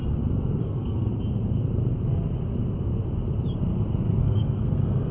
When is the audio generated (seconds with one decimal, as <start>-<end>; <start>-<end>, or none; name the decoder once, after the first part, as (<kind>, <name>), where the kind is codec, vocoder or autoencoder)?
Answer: 0.6-1.1 (codec, SNAC); 4.2-5.1